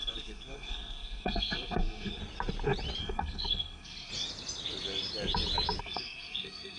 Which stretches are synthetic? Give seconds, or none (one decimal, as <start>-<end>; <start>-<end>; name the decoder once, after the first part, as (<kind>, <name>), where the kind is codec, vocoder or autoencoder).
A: 0.0-2.2 (codec, SNAC); 3.0-4.1; 5.8-6.8

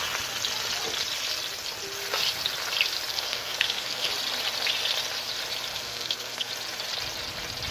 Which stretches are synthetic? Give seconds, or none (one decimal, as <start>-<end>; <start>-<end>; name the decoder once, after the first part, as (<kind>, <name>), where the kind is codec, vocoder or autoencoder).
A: 3.1-4.1 (codec, SNAC); 5.7-6.5

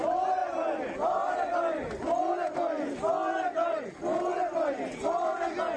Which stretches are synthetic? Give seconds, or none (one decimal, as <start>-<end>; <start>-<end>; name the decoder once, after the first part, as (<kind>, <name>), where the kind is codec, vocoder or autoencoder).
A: none